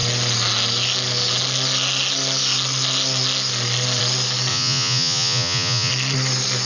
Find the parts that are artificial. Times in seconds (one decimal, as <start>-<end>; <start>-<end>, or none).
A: 4.5-5.9